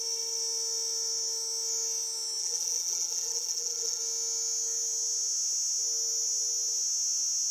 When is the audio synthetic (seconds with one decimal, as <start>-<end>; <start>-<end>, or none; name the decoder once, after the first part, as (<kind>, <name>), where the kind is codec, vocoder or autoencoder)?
2.4-4.0 (vocoder, BigVGAN v2)